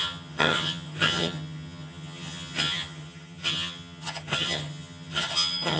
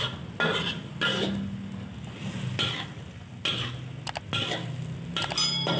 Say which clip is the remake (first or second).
first